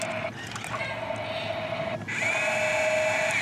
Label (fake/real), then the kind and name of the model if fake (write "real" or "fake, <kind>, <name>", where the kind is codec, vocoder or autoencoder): real